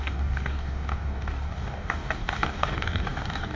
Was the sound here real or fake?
fake